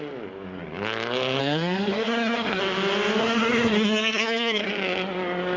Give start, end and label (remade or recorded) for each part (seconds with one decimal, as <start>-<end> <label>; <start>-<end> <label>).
0.0-1.4 recorded; 1.4-2.6 remade; 2.6-3.2 recorded; 3.2-4.7 remade; 4.7-5.6 recorded